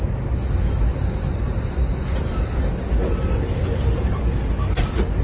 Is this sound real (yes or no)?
yes